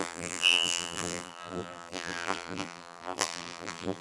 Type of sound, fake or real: fake